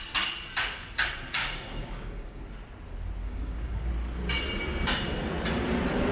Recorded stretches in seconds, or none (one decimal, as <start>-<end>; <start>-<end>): 0.0-1.4; 2.4-3.2; 3.9-6.1